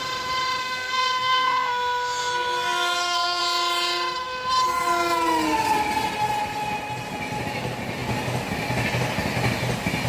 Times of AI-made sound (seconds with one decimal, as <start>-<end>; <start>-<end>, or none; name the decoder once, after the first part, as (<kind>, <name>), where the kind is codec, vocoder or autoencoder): 0.6-3.4 (codec, SNAC)

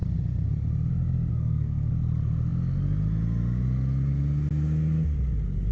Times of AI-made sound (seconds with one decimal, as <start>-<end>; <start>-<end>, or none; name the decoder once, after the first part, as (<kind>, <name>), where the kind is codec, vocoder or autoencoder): 1.3-1.9 (codec, SNAC)

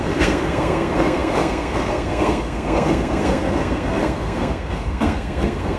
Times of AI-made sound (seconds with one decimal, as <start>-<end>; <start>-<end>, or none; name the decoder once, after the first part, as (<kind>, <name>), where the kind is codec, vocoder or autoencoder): 0.0-5.8 (codec, SNAC)

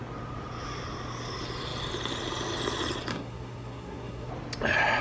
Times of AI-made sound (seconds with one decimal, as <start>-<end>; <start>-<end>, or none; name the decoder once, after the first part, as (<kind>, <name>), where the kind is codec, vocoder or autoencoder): 3.1-4.3 (codec, SNAC)

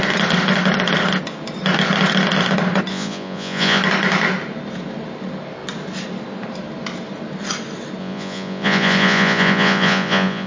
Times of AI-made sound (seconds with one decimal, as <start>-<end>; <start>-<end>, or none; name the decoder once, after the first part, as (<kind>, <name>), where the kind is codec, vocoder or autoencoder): 2.9-3.8 (vocoder, Vocos); 8.0-10.5

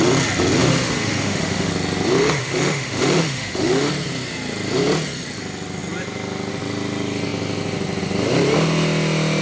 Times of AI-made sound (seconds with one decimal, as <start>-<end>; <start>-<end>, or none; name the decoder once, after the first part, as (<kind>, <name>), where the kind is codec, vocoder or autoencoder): 0.6-1.7 (autoencoder, DAC-VAE); 2.4-3.9

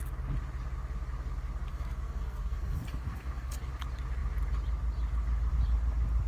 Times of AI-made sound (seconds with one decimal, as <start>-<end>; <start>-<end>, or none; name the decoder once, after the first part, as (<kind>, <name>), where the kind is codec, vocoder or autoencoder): 1.7-3.7 (codec, SNAC)

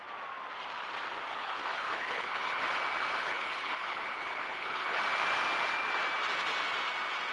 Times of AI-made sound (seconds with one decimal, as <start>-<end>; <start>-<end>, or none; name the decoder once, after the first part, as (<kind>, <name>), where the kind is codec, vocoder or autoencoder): 1.3-2.6 (codec, HILCodec); 3.2-5.0